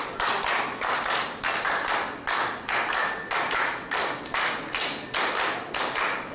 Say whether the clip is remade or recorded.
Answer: recorded